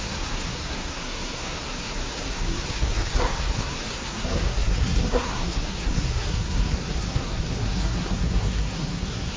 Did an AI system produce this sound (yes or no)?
yes